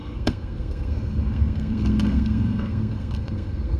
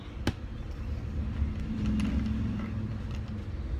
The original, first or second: second